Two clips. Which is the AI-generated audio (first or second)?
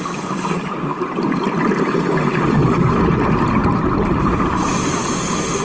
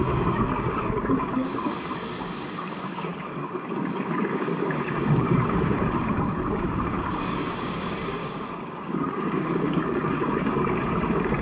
second